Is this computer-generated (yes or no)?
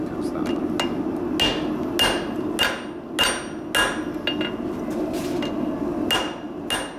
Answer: no